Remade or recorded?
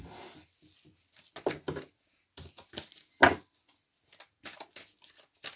recorded